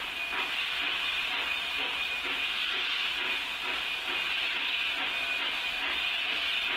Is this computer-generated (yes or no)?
no